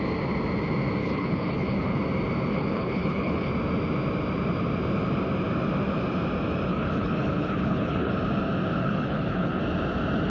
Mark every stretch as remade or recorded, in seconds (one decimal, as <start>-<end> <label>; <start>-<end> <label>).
0.0-1.0 recorded; 1.0-2.0 remade; 2.0-2.5 recorded; 2.5-3.5 remade; 3.5-6.7 recorded; 6.7-8.1 remade; 8.1-8.8 recorded; 8.8-9.6 remade; 9.6-10.3 recorded